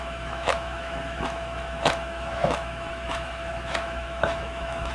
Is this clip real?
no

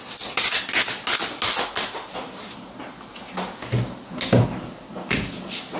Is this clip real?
yes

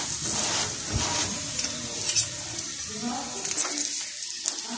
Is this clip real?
yes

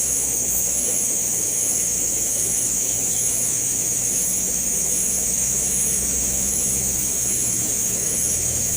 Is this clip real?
no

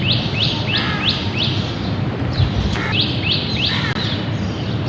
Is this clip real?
yes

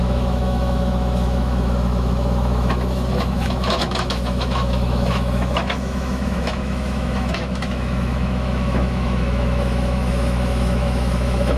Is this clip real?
no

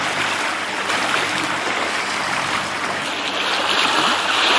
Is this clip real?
yes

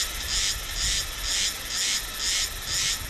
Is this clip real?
yes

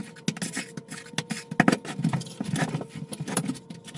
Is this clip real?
yes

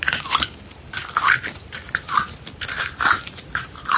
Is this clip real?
yes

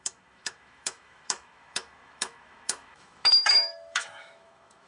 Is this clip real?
no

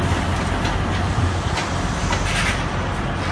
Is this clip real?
yes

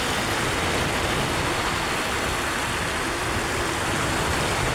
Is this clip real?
yes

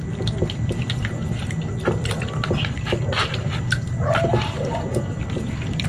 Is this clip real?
yes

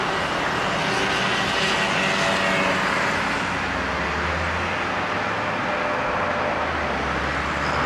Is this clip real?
yes